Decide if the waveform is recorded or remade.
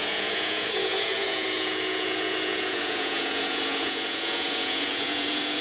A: remade